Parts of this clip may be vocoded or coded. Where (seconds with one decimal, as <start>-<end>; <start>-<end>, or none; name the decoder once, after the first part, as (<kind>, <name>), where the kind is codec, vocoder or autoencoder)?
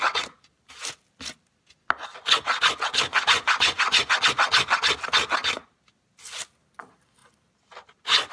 3.1-4.1 (vocoder, Vocos)